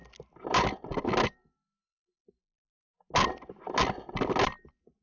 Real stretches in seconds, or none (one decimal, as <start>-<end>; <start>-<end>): 0.0-5.0